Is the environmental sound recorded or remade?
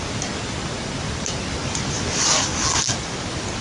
recorded